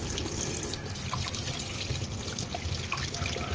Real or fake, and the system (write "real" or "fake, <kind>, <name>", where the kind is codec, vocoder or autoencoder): real